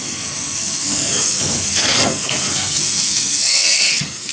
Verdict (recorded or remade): remade